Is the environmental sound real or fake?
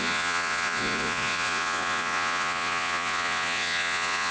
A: fake